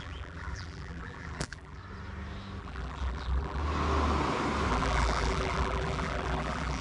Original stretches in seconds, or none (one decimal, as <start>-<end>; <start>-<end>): 1.8-2.6; 3.6-4.7